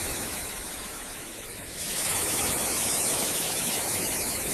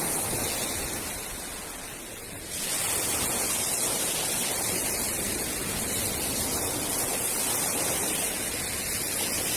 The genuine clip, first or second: second